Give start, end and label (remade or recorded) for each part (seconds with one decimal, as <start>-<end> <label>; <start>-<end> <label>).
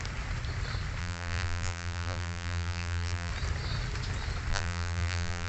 0.0-1.0 recorded; 1.0-3.3 remade; 3.3-4.5 recorded; 4.5-5.5 remade